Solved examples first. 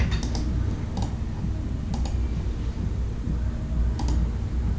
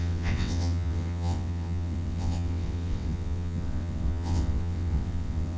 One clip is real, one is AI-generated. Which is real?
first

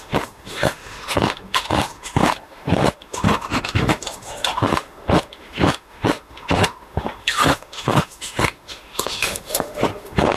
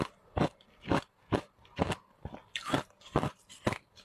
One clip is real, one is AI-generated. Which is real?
second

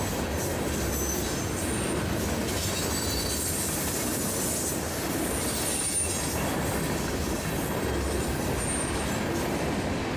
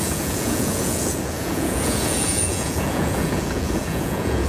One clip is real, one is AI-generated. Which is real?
first